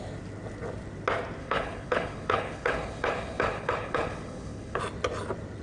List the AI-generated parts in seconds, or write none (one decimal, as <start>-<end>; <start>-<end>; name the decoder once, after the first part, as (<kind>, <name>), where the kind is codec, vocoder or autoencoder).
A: 1.4-4.8 (codec, HILCodec)

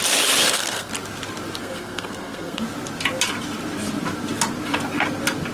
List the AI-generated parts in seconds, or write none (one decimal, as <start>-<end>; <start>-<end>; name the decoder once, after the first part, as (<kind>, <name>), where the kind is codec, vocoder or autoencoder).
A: 0.4-0.9 (codec, SNAC); 1.6-2.6

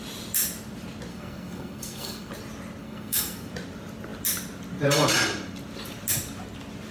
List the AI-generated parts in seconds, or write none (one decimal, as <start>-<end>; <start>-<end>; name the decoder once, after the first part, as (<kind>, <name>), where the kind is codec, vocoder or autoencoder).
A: 1.1-2.3 (codec, SNAC); 2.8-3.5